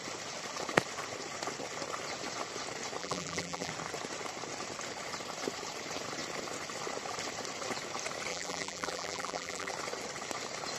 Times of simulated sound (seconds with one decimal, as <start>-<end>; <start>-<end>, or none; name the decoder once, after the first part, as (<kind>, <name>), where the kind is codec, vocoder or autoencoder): 3.0-3.7 (vocoder, BigVGAN v2); 8.3-9.7